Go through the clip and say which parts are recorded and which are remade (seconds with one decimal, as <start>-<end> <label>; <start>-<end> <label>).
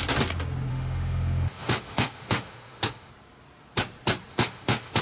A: 0.0-0.7 recorded; 0.7-3.1 remade; 3.1-4.3 recorded; 4.3-5.0 remade